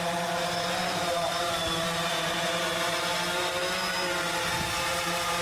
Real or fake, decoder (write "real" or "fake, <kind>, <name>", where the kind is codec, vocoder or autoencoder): fake, vocoder, BigVGAN v2